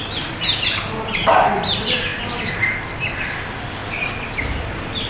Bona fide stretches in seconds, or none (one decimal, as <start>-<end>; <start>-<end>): 3.8-4.4